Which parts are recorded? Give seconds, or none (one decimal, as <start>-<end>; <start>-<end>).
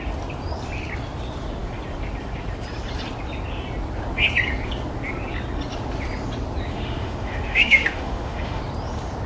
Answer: 0.0-6.7; 8.6-9.3